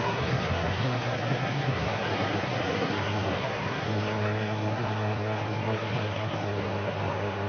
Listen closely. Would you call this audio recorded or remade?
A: remade